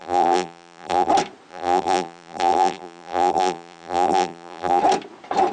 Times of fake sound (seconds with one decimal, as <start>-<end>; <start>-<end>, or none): 0.0-1.1; 1.5-4.8